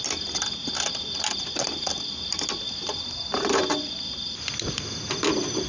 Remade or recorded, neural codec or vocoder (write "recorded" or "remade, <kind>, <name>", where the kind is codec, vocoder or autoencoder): recorded